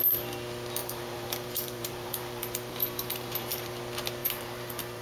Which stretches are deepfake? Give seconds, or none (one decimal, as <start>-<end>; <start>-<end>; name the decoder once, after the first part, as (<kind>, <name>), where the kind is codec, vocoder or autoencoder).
0.8-3.8 (vocoder, BigVGAN v2); 4.2-5.0